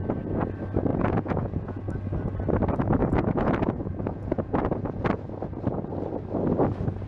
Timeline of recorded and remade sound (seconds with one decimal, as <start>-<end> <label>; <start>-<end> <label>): 0.0-0.9 recorded; 0.9-1.8 remade; 1.8-3.0 recorded; 3.0-5.2 remade; 5.2-7.1 recorded